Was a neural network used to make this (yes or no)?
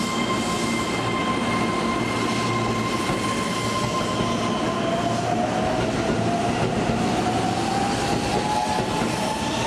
no